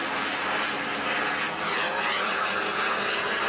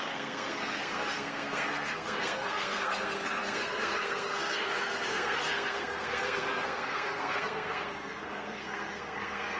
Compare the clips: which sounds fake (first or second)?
second